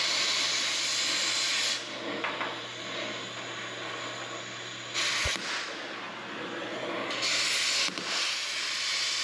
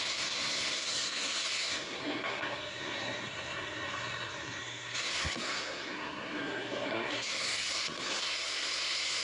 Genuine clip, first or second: first